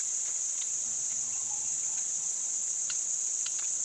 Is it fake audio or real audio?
fake